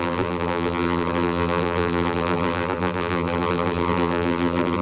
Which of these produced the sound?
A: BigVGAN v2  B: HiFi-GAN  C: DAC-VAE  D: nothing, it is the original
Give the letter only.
A